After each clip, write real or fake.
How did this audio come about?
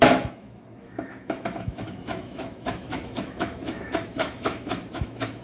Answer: fake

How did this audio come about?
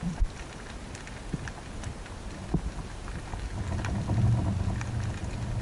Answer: real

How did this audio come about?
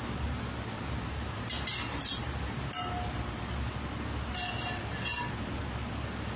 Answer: real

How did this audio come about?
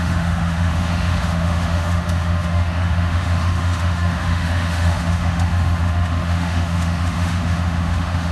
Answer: fake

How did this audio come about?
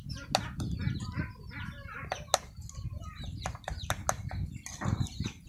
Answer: real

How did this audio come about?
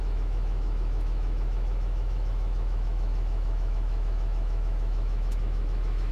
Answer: fake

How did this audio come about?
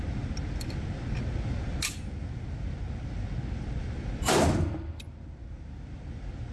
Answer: real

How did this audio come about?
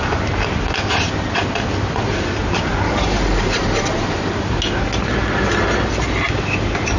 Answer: real